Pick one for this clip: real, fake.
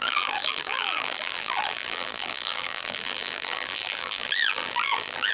fake